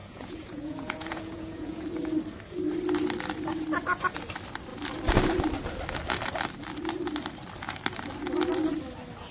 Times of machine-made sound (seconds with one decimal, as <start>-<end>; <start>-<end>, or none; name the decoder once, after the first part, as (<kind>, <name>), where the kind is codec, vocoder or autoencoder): 0.0-1.8 (vocoder, Vocos)